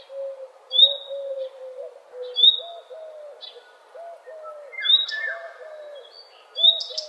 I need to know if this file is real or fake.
real